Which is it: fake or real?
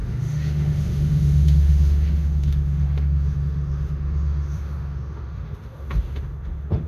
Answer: fake